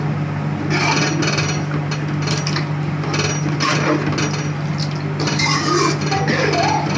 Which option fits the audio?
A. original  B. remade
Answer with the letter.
A